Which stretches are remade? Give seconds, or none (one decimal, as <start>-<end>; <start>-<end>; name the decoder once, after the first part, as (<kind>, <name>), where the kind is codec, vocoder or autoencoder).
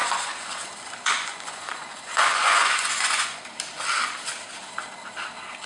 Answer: 0.0-3.4 (vocoder, Vocos)